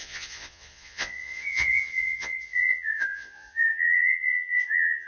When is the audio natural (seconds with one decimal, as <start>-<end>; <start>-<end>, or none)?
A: none